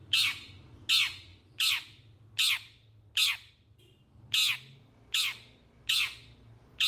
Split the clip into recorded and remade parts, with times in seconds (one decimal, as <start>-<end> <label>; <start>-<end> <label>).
0.0-0.9 remade; 0.9-6.9 recorded

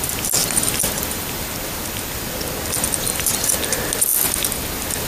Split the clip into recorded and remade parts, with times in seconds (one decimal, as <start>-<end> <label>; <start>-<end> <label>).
0.0-5.1 recorded

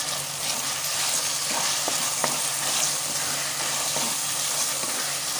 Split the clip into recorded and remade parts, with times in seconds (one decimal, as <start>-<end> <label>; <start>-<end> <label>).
0.0-2.2 recorded; 2.2-4.9 remade; 4.9-5.4 recorded

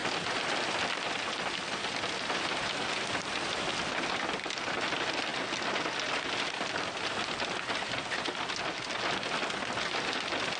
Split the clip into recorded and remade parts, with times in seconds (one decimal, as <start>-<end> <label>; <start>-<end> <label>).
0.0-3.7 remade; 3.7-10.6 recorded

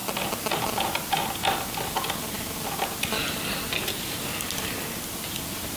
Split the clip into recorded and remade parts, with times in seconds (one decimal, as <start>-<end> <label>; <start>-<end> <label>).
0.0-5.8 recorded